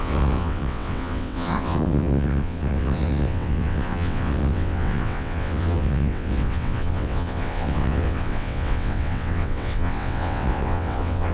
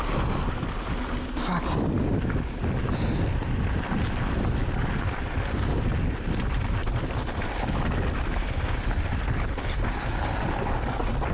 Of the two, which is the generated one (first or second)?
first